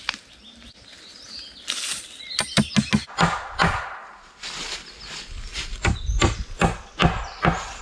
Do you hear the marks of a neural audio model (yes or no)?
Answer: no